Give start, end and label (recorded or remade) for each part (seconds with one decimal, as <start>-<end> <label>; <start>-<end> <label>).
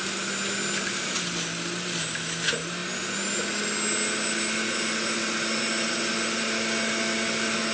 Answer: 0.0-7.7 recorded